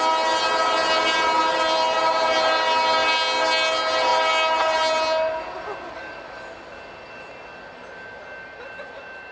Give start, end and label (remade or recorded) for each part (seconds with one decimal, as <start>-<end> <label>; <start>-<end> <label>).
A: 0.0-9.3 recorded